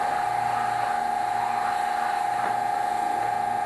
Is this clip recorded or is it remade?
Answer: recorded